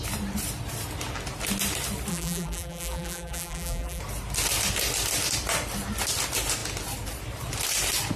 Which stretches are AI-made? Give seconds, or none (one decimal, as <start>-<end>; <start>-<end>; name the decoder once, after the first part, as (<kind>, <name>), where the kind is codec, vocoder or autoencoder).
2.1-4.0 (vocoder, BigVGAN v2)